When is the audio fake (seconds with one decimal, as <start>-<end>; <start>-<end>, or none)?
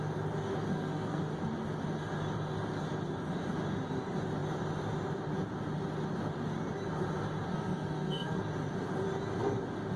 0.7-1.2; 7.5-8.4